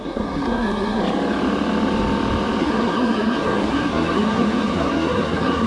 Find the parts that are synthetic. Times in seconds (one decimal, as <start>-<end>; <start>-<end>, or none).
0.0-1.0; 2.6-5.7